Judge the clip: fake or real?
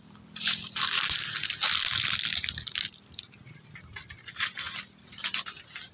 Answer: real